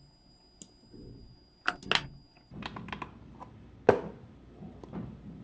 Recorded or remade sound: recorded